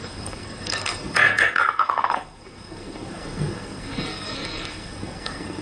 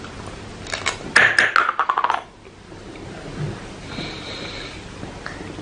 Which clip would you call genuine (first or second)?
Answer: second